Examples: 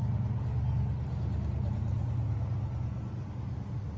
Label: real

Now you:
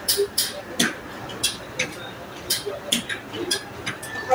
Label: fake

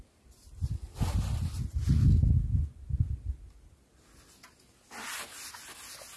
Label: real